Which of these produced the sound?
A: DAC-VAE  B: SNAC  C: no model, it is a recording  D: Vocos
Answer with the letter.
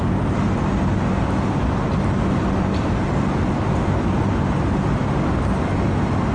C